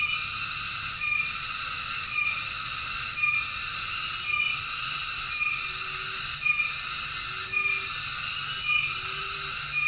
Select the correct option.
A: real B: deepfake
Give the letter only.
A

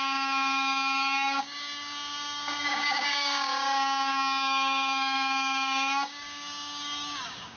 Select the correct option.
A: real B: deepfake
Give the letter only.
B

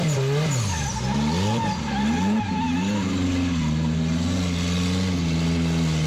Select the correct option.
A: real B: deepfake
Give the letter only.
A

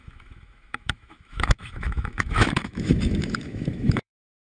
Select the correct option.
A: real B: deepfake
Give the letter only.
B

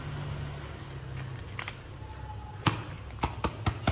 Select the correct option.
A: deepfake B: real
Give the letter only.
B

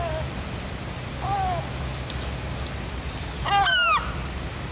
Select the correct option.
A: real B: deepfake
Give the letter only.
A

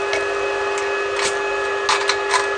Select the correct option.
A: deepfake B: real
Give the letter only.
B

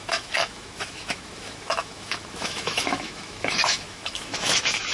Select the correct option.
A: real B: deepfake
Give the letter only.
B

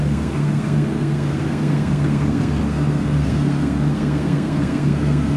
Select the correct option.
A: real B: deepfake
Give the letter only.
B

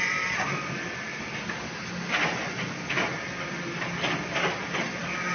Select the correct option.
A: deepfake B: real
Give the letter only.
B